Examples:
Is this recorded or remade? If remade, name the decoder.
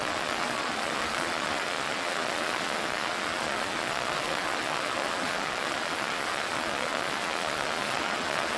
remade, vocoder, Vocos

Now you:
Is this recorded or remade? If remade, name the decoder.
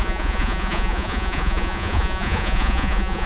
remade, vocoder, Vocos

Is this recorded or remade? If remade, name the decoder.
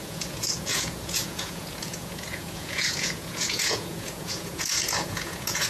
remade, vocoder, Vocos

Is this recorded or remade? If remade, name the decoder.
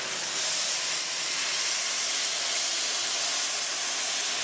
recorded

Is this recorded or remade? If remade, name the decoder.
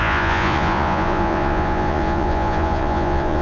remade, vocoder, Vocos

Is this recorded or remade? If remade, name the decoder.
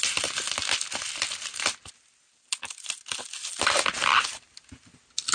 recorded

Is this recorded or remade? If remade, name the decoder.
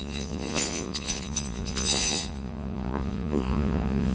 remade, vocoder, Vocos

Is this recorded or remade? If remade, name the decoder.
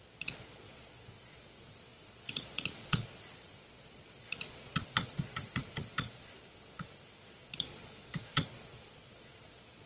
remade, vocoder, Vocos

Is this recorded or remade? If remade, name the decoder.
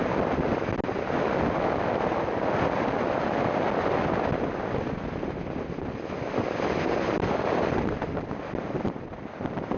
recorded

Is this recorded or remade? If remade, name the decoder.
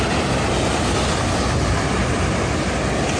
recorded